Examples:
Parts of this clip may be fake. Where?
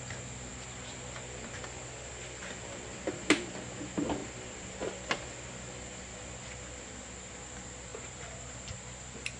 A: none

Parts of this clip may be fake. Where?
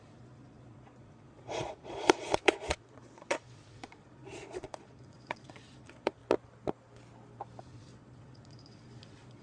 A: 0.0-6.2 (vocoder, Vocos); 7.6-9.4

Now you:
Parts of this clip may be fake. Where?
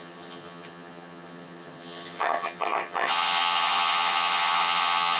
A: 0.0-5.2 (vocoder, HiFi-GAN)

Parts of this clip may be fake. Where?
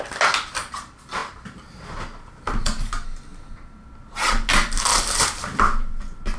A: 4.9-5.6 (vocoder, BigVGAN v2)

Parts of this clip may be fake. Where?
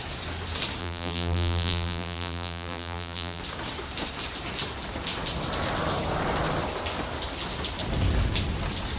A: 0.8-3.4 (vocoder, BigVGAN v2)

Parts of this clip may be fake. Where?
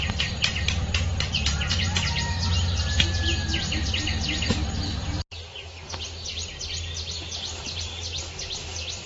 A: none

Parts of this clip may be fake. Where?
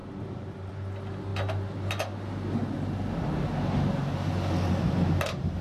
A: none